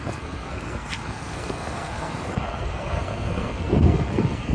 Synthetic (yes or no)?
yes